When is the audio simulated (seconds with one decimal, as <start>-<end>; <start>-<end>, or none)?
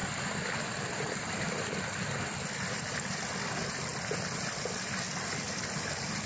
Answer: none